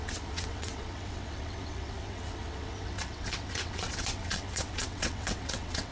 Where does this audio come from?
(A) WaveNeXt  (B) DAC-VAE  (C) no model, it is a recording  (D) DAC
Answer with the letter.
A